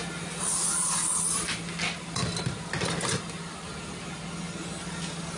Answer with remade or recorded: recorded